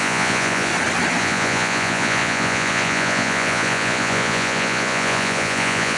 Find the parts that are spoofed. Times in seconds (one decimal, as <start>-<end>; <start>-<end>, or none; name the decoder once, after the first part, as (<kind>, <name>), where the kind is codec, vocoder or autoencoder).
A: 0.0-0.7 (vocoder, Vocos); 1.2-6.0